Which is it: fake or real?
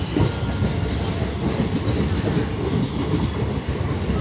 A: real